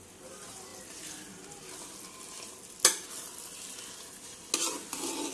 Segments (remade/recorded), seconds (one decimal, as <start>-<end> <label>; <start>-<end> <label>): 0.0-5.3 recorded